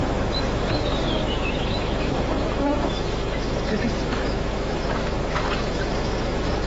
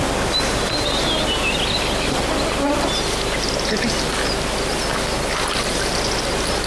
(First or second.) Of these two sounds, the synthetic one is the first